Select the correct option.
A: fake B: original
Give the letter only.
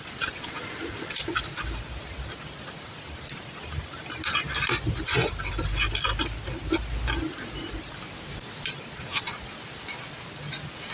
B